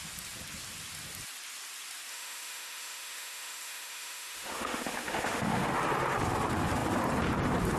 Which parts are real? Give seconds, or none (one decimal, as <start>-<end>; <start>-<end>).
0.0-2.1; 5.8-7.8